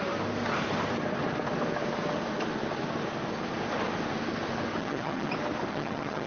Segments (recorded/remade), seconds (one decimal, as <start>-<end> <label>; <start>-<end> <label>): 0.0-4.8 recorded; 4.8-5.3 remade; 5.3-5.7 recorded; 5.7-6.3 remade